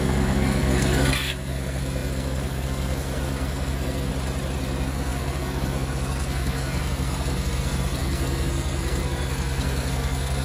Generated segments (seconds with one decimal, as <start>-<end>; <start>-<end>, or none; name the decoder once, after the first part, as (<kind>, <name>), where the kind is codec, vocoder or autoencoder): 0.0-4.1 (codec, SNAC); 4.6-10.4